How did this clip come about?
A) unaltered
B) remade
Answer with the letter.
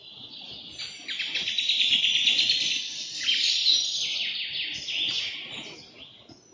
A